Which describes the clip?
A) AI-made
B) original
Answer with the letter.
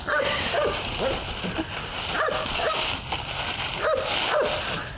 B